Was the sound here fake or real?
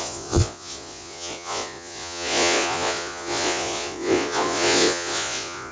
fake